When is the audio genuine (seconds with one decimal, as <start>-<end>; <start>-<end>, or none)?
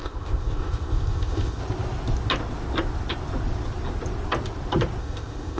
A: 1.6-5.0